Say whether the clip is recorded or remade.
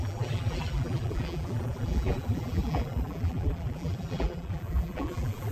remade